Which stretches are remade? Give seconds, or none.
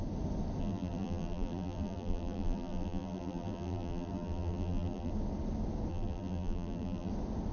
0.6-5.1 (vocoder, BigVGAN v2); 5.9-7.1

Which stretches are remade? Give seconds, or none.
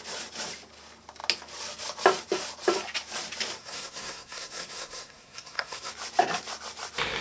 3.6-5.9 (codec, SNAC)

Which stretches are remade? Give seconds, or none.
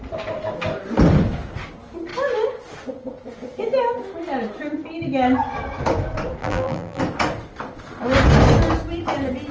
6.4-7.0 (vocoder, BigVGAN v2)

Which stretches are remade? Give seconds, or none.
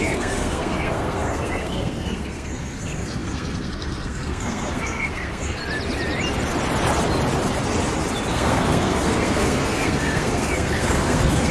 0.0-5.6 (codec, SNAC); 8.3-11.5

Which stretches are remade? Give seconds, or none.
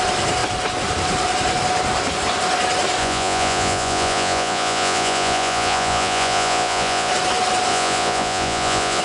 3.0-7.1 (vocoder, Vocos); 7.7-9.0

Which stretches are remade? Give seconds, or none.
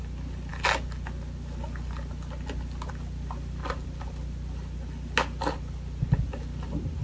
none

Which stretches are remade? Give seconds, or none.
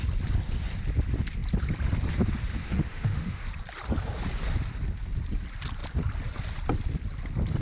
2.6-3.4 (autoencoder, DAC-VAE)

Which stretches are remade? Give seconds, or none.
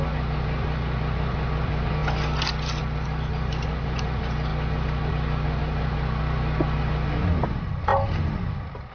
none